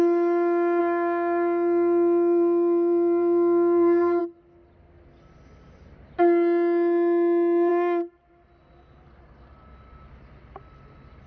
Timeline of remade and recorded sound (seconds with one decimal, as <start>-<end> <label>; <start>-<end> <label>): 0.0-0.8 recorded; 0.8-4.2 remade; 4.2-11.3 recorded